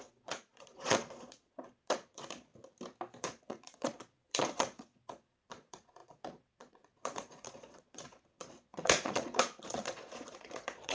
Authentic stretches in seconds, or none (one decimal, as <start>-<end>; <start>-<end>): 2.5-3.2